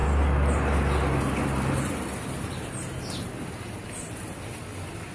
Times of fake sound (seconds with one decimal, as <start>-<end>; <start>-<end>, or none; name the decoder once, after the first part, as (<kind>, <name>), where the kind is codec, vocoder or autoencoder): none